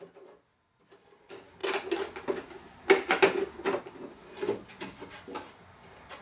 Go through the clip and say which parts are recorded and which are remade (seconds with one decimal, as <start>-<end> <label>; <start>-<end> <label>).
0.0-6.2 recorded